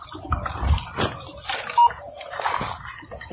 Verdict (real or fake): real